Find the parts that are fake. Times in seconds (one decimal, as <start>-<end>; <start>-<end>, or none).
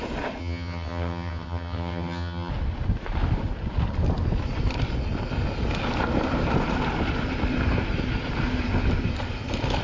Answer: 0.4-2.5